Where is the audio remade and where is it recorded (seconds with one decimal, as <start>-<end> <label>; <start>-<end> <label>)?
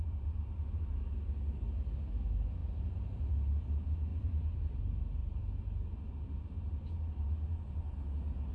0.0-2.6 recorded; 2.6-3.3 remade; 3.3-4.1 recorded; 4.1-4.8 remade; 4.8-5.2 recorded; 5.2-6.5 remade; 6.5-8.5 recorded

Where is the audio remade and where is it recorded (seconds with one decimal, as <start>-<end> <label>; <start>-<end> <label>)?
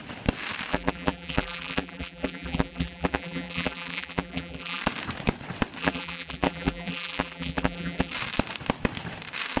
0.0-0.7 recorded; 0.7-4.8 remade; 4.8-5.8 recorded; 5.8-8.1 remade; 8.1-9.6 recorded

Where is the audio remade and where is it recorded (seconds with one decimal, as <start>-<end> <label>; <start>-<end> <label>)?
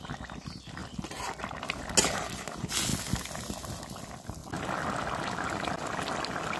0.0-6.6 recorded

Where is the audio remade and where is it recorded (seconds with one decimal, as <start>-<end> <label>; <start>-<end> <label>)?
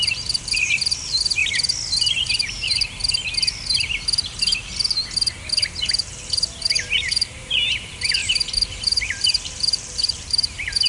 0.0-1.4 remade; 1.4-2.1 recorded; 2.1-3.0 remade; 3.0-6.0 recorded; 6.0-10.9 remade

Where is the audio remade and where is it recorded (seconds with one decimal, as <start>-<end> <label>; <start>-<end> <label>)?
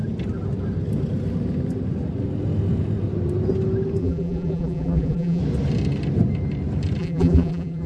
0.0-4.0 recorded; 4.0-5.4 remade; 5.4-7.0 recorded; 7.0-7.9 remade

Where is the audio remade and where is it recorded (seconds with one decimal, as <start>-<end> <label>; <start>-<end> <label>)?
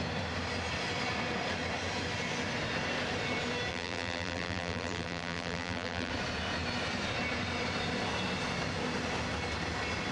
0.0-3.7 recorded; 3.7-6.1 remade; 6.1-10.1 recorded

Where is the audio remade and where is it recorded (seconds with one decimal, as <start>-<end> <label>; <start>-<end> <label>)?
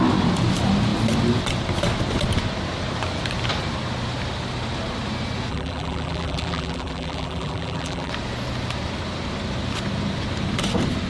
0.0-5.5 recorded; 5.5-8.1 remade; 8.1-11.1 recorded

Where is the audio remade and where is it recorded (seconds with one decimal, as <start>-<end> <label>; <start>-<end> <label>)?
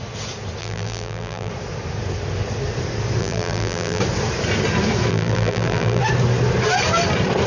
0.0-0.6 recorded; 0.6-1.5 remade; 1.5-3.2 recorded; 3.2-4.0 remade; 4.0-5.1 recorded; 5.1-6.0 remade; 6.0-7.5 recorded